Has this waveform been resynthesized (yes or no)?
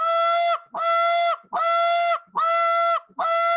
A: no